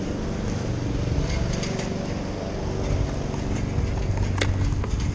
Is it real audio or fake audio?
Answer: real